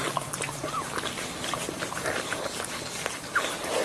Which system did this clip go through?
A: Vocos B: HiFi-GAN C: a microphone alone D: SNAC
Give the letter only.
C